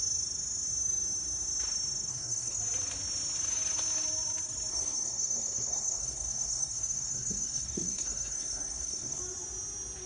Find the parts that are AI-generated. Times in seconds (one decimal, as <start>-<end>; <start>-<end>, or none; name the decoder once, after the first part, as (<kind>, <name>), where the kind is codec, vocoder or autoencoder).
2.1-2.6 (codec, SNAC); 4.7-9.2